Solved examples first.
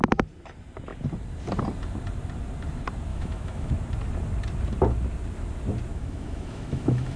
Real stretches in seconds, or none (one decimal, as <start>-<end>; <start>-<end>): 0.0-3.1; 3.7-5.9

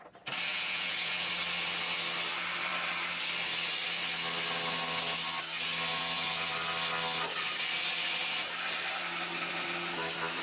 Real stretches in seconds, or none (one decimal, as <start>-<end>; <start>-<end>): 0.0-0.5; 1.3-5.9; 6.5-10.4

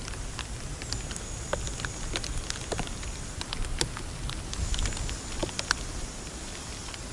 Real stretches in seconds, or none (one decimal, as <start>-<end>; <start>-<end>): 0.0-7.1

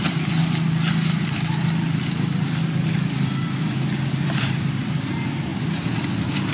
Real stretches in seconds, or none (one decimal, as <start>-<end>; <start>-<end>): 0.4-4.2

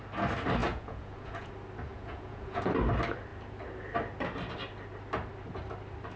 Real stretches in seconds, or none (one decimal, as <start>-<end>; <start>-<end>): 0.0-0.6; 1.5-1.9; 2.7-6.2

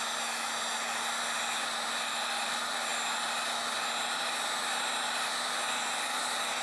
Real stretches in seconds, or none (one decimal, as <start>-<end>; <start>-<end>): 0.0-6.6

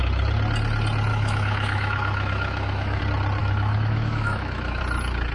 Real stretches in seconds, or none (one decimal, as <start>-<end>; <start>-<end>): 0.0-1.1; 3.0-3.4; 4.8-5.3

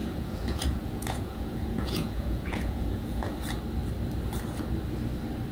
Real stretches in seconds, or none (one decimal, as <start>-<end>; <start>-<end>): 3.3-5.5